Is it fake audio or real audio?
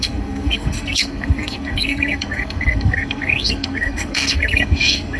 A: fake